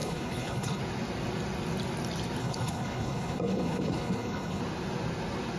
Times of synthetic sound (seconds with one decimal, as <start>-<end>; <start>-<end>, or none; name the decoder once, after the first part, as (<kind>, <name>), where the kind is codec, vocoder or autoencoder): 0.0-0.8 (codec, HILCodec); 2.4-4.6